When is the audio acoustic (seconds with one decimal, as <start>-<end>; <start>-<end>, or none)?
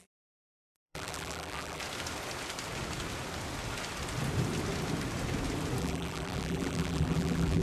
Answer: 1.8-5.8